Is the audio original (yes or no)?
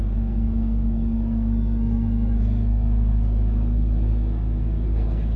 no